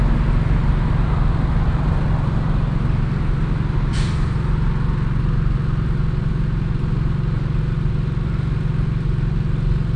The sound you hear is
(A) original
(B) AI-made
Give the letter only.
A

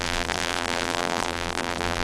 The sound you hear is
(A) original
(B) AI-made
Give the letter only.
B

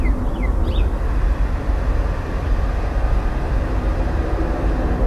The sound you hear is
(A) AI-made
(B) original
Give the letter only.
B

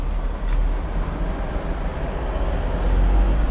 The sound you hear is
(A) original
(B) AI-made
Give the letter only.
A